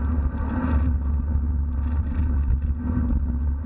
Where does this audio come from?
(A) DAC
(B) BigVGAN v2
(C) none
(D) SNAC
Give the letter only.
C